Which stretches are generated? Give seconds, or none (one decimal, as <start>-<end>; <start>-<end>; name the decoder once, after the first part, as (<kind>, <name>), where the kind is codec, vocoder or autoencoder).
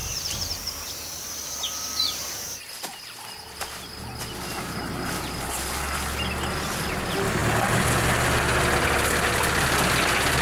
0.0-5.0 (vocoder, BigVGAN v2)